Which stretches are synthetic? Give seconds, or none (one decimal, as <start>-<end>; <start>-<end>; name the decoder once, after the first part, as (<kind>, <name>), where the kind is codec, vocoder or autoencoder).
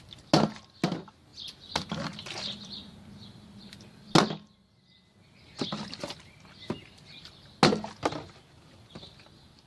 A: none